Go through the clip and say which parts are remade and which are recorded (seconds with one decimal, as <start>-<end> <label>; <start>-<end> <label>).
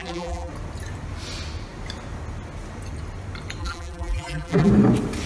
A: 0.0-0.5 remade; 0.5-3.6 recorded; 3.6-4.7 remade; 4.7-5.3 recorded